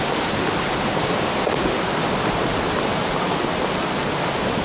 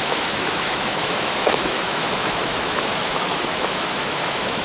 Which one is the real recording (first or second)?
first